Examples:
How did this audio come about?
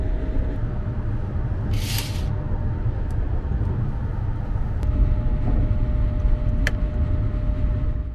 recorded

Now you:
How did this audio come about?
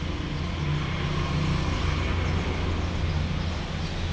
recorded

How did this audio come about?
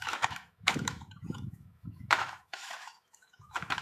remade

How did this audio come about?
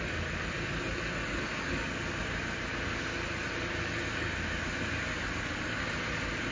recorded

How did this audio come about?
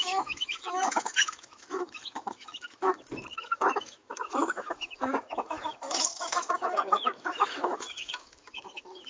remade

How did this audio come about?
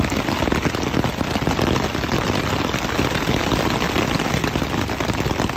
recorded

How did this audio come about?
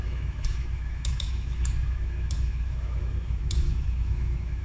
remade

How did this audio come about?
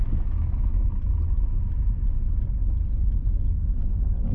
recorded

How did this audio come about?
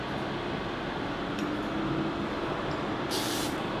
recorded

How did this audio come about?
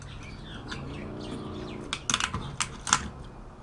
recorded